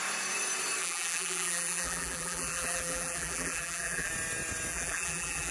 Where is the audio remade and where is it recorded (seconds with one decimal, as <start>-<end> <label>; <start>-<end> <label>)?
0.0-0.8 recorded; 0.8-4.1 remade; 4.1-4.7 recorded; 4.7-5.5 remade